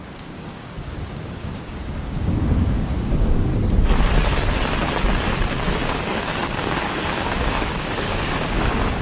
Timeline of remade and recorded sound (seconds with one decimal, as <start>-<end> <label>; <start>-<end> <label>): 0.0-3.5 remade; 3.5-5.9 recorded; 5.9-9.0 remade